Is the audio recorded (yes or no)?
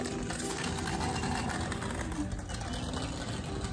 yes